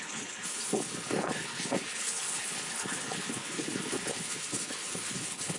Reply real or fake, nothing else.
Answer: fake